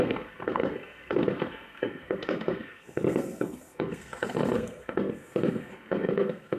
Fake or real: fake